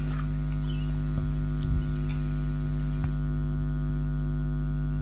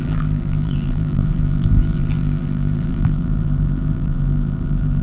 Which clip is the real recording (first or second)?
first